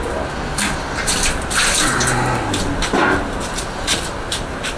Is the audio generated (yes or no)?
no